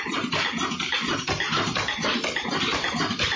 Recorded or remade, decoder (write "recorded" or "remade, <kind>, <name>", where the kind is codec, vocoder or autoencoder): recorded